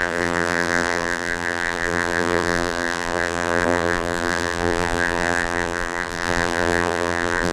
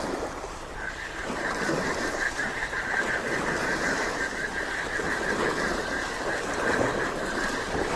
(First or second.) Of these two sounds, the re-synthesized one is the first